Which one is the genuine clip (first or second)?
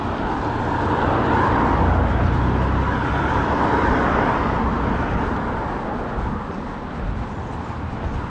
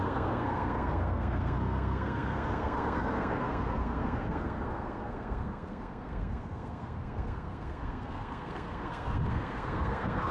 first